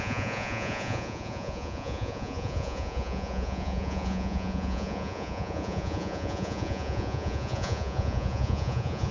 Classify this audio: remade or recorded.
remade